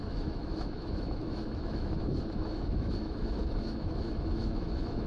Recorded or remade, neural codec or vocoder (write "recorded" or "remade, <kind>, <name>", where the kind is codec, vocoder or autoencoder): remade, autoencoder, DAC-VAE